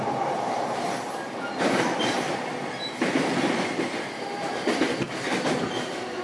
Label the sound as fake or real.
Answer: fake